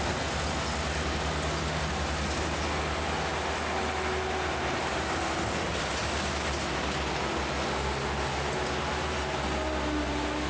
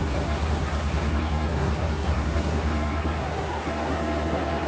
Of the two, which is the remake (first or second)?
second